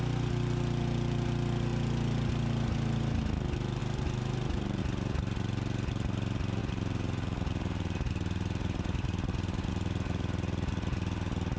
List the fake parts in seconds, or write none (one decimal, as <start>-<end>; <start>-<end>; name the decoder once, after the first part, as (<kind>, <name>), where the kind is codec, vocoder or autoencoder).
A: 3.8-4.8 (vocoder, BigVGAN v2); 6.6-9.7